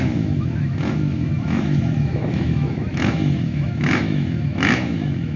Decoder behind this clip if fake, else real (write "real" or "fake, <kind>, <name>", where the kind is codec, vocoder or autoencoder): fake, autoencoder, DAC-VAE